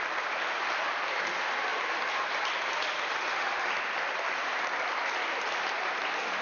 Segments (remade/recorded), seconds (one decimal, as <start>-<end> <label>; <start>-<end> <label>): 0.0-6.4 recorded